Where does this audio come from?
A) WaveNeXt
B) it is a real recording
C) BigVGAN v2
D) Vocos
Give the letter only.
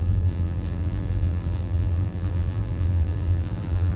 C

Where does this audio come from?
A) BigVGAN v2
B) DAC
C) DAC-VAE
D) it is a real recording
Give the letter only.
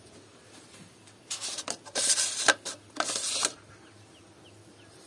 D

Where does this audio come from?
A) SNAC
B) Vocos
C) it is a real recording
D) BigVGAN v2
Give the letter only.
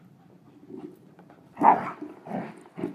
D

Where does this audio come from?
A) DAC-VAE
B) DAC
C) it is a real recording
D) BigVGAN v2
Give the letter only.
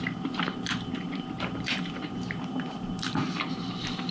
D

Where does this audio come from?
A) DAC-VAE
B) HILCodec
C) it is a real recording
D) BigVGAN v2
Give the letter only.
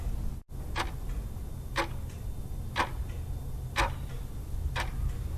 C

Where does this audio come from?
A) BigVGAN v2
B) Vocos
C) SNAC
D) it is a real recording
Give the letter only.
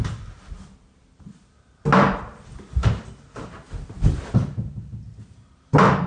D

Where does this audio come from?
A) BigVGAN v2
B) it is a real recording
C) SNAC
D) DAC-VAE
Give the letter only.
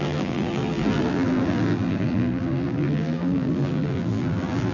A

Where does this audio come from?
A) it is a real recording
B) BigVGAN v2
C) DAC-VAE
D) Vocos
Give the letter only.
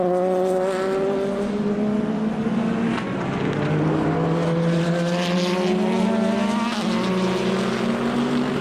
A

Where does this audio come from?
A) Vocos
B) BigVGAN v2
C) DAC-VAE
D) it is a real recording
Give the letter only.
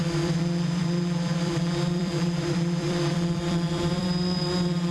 B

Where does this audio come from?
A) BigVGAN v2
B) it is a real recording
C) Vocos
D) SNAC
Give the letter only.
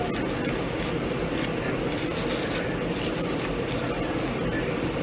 B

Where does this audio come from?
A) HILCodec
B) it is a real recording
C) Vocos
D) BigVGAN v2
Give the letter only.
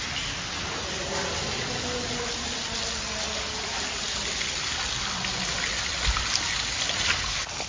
B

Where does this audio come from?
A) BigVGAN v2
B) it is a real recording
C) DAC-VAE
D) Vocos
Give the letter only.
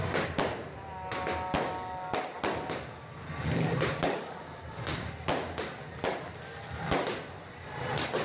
B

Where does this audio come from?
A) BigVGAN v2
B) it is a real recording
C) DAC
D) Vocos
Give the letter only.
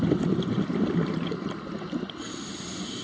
B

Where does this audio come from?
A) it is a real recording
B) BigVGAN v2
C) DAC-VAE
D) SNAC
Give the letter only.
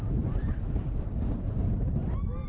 B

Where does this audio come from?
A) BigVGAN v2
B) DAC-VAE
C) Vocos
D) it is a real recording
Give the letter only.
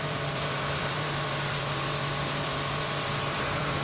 A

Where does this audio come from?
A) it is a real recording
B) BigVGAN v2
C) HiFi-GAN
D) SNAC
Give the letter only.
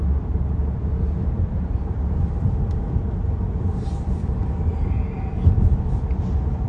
B